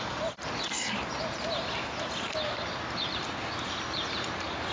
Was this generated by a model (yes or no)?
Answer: no